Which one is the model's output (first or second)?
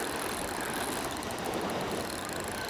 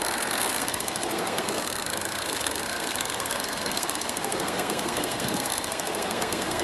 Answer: second